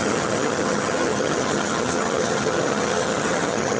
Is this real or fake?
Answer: fake